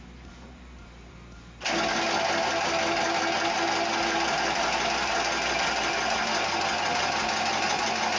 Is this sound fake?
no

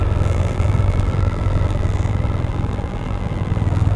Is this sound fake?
yes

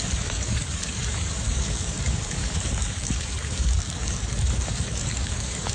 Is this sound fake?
yes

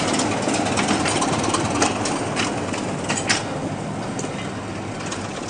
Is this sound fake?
no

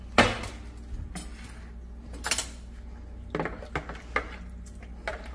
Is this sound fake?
no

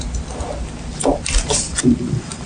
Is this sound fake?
no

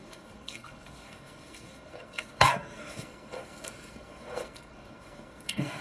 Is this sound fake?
yes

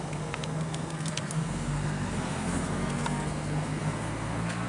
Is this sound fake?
yes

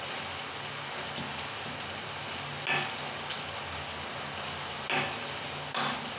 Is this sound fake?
no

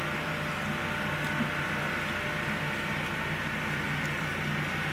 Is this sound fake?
no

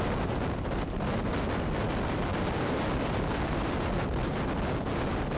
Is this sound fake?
no